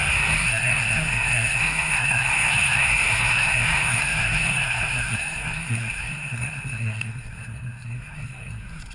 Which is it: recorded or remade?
remade